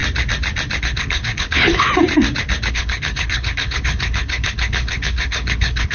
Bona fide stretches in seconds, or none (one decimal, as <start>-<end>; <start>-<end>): 0.0-0.8; 1.9-2.7